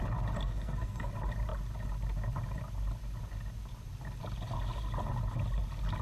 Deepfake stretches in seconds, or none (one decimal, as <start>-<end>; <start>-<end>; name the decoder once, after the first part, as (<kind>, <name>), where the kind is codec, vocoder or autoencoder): 0.4-1.1 (codec, SNAC)